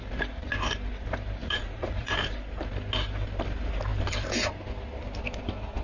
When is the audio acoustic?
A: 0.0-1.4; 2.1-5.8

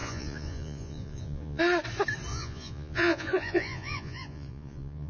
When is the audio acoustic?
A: 1.6-2.3

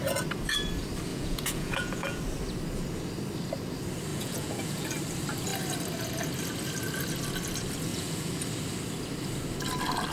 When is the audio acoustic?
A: 0.0-1.1; 2.2-4.1; 4.9-7.9; 8.4-10.1

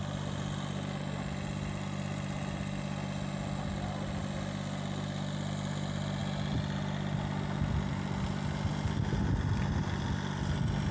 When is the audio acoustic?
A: 0.0-10.9